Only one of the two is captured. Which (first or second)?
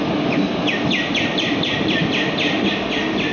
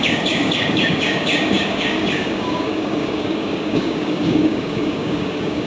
first